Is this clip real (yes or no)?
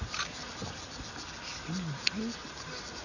yes